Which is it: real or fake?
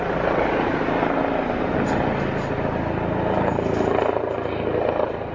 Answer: real